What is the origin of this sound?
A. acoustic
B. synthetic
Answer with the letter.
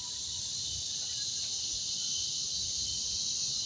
A